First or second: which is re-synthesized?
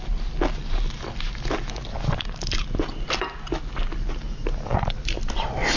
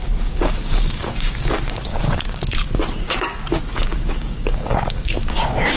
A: second